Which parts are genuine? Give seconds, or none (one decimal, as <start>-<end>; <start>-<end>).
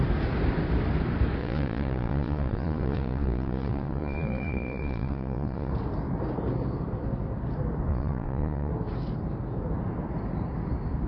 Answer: 0.0-1.4; 5.7-7.9; 8.7-11.1